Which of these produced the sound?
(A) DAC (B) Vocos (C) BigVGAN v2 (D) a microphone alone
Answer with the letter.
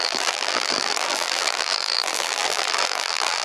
C